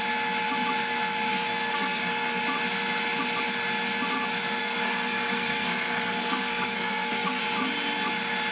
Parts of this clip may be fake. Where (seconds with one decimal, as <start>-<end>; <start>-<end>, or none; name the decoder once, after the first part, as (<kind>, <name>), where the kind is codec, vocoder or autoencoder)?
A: 1.3-2.4 (codec, SNAC); 4.6-7.4